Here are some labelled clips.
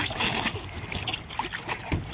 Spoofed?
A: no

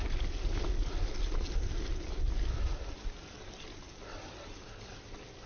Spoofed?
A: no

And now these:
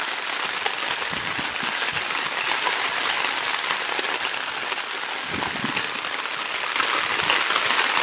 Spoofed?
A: no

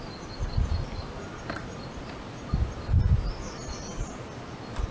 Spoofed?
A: no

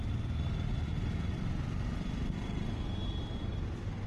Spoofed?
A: no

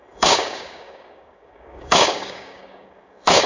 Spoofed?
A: yes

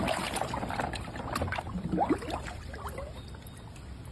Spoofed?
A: no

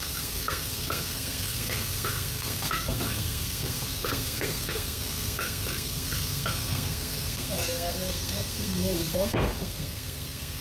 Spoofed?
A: yes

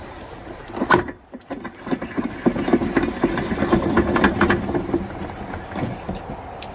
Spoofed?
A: no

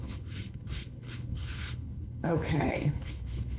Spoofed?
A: yes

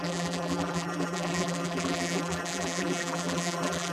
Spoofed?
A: yes